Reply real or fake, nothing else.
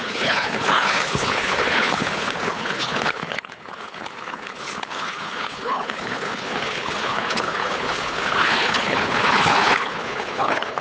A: fake